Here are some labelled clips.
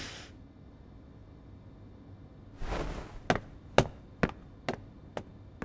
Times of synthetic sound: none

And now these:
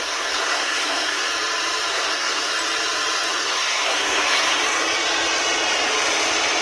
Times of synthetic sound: 0.0-1.3; 1.9-2.5; 3.3-4.6

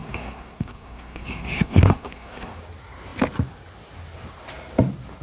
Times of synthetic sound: 0.0-2.6

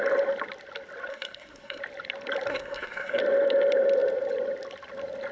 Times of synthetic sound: 1.1-1.8; 2.5-3.2

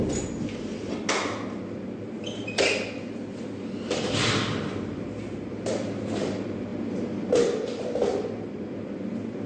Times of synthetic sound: none

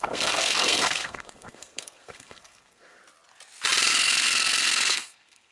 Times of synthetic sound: 0.0-3.0; 3.9-5.5